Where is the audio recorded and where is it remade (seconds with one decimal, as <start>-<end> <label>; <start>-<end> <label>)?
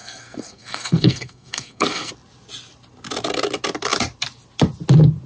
0.0-2.1 remade; 2.1-5.3 recorded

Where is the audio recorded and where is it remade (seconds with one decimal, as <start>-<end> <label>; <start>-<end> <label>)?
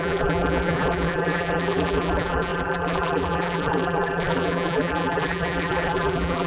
0.0-6.5 remade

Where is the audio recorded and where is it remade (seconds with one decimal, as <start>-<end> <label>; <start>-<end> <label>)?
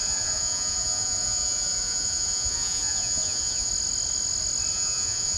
0.0-3.7 remade; 3.7-4.7 recorded; 4.7-5.4 remade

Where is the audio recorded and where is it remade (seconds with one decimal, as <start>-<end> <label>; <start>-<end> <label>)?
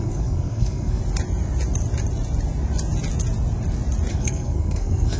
0.0-1.0 remade; 1.0-4.1 recorded; 4.1-5.2 remade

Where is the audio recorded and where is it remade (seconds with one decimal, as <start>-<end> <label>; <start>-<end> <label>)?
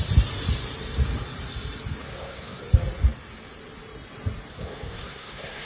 0.0-2.0 recorded; 2.0-2.6 remade; 2.6-4.5 recorded; 4.5-5.7 remade